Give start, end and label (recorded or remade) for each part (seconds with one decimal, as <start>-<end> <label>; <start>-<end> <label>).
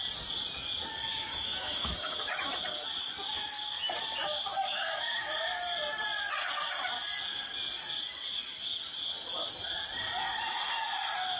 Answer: 0.0-1.1 recorded; 1.1-2.6 remade; 2.6-4.5 recorded; 4.5-5.3 remade; 5.3-11.4 recorded